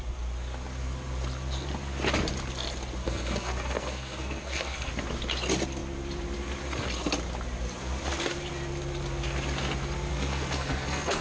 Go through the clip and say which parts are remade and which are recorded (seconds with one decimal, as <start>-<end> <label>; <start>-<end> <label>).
0.0-3.0 recorded; 3.0-4.9 remade; 4.9-10.1 recorded; 10.1-11.2 remade